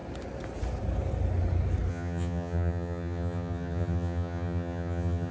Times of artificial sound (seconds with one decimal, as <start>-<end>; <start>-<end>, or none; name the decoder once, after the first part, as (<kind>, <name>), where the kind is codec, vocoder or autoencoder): 1.9-5.3 (vocoder, HiFi-GAN)